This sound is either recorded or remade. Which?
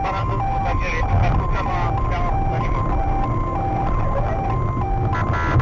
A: recorded